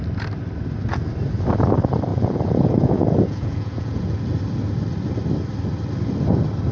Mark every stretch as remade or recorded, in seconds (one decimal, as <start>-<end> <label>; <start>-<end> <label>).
0.0-2.1 recorded; 2.1-4.2 remade; 4.2-6.7 recorded

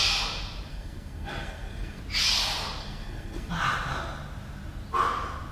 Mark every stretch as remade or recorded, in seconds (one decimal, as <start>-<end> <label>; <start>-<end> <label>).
0.0-0.7 recorded; 0.7-2.0 remade; 2.0-2.8 recorded; 2.8-3.5 remade; 3.5-5.5 recorded